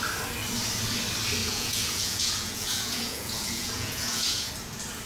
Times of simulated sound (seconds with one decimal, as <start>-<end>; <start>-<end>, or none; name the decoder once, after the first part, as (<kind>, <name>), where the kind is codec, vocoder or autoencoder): 1.4-4.5 (vocoder, Vocos)